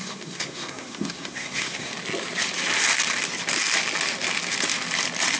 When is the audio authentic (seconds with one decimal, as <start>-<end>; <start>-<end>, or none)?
1.9-5.4